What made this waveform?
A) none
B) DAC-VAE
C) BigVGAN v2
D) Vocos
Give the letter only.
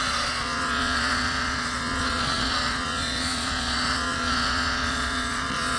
D